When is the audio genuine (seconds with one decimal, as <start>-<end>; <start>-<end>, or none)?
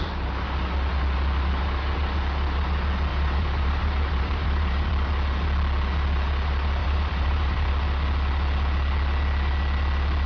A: 0.0-3.1; 4.9-6.8; 7.7-10.3